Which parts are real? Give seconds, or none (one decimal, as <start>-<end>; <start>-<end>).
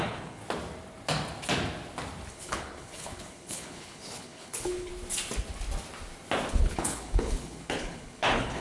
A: 0.4-2.3; 4.9-6.5